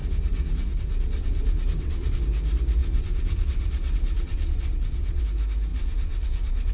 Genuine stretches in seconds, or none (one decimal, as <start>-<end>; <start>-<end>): 2.2-2.8; 5.2-5.7